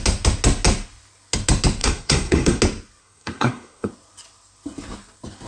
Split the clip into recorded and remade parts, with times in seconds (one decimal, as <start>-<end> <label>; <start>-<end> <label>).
0.0-1.8 recorded; 1.8-2.6 remade; 2.6-3.0 recorded; 3.0-3.9 remade; 3.9-5.5 recorded